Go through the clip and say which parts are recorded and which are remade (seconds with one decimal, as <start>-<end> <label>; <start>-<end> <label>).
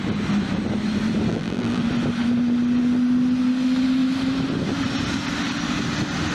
0.0-1.3 recorded; 1.3-1.8 remade; 1.8-6.3 recorded